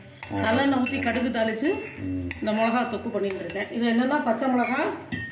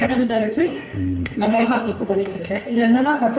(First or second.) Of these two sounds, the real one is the first